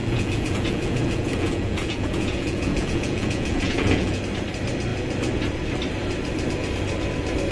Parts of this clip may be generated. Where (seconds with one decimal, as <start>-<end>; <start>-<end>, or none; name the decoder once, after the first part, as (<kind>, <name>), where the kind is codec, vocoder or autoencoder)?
0.0-4.2 (vocoder, Vocos)